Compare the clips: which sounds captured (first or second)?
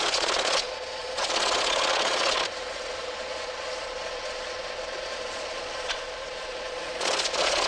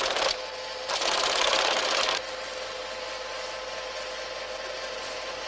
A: second